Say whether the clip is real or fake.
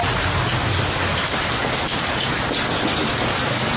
real